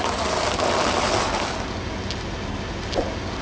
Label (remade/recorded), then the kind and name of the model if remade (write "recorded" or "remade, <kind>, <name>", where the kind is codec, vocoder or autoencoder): recorded